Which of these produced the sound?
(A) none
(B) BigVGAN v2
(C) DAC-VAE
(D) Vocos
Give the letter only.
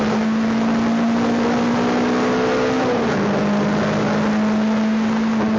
A